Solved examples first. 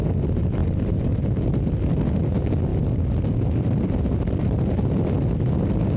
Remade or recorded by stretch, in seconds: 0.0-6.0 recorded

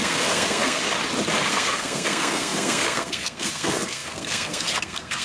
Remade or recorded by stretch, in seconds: 0.0-0.8 remade; 0.8-1.5 recorded; 1.5-5.2 remade

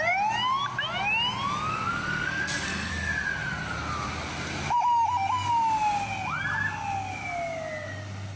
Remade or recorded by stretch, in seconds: 0.0-1.7 recorded; 1.7-2.9 remade; 2.9-8.4 recorded

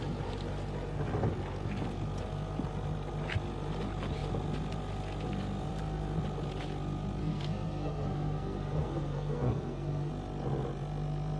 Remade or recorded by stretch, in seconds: 0.0-7.2 recorded; 7.2-10.1 remade; 10.1-11.4 recorded

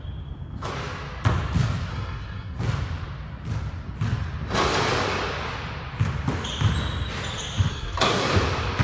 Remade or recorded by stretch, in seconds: 0.0-1.9 recorded; 1.9-2.6 remade; 2.6-7.7 recorded; 7.7-8.3 remade; 8.3-8.8 recorded

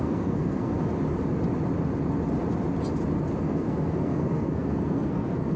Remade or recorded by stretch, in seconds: 0.0-0.8 remade; 0.8-3.4 recorded; 3.4-5.6 remade

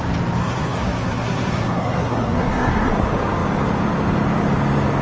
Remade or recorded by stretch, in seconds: 0.0-0.4 recorded; 0.4-2.9 remade; 2.9-5.0 recorded

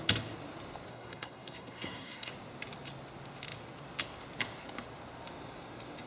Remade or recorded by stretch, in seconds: 0.0-0.9 recorded; 0.9-2.3 remade; 2.3-6.1 recorded